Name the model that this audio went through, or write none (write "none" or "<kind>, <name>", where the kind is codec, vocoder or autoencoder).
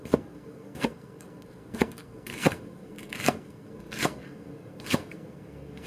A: codec, SNAC